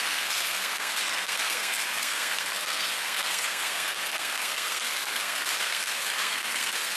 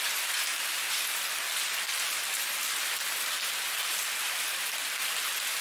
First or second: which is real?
second